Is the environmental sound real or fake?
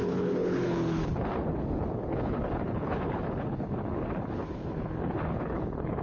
fake